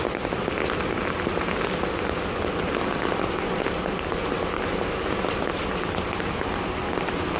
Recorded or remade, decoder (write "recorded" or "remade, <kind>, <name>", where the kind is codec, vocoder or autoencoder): recorded